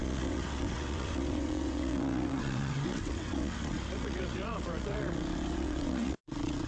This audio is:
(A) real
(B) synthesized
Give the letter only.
B